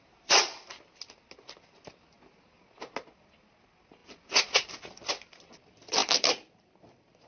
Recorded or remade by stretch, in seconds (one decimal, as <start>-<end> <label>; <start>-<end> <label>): 0.0-6.0 recorded; 6.0-6.7 remade; 6.7-7.3 recorded

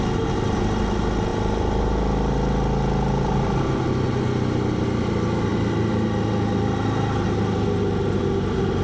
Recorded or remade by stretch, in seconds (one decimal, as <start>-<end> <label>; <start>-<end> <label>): 0.0-8.8 recorded

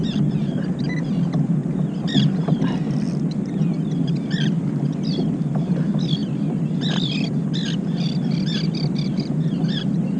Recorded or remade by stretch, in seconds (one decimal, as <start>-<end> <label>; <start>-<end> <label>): 0.0-6.2 recorded; 6.2-9.6 remade; 9.6-10.2 recorded

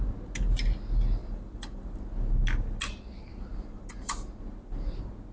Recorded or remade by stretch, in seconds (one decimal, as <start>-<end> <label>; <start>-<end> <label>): 0.0-1.2 recorded; 1.2-1.8 remade; 1.8-3.5 recorded; 3.5-4.4 remade; 4.4-5.3 recorded

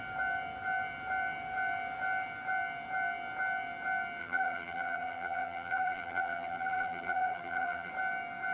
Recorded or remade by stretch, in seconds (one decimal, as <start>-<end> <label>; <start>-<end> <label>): 0.0-4.2 recorded; 4.2-7.9 remade; 7.9-8.5 recorded

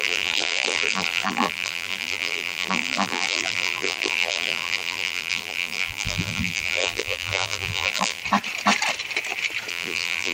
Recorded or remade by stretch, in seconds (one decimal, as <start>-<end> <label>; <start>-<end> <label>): 0.0-8.2 remade; 8.2-9.7 recorded; 9.7-10.3 remade